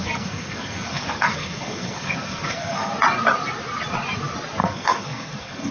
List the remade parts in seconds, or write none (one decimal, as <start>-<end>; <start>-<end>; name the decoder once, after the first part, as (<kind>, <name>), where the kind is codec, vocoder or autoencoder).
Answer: 0.0-2.9 (codec, SNAC); 4.6-5.7